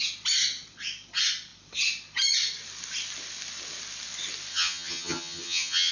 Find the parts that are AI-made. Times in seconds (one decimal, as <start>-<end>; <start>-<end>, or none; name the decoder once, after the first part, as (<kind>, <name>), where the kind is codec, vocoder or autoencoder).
4.5-5.9 (vocoder, HiFi-GAN)